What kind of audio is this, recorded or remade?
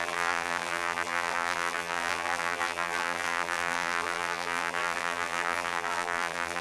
remade